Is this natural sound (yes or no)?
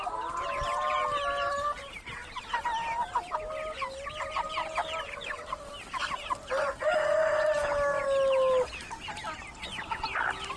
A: yes